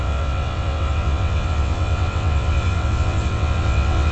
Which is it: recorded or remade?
remade